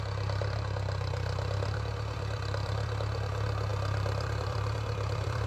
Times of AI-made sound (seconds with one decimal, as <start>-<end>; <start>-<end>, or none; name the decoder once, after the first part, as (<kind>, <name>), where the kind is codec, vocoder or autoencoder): 0.0-5.5 (vocoder, BigVGAN v2)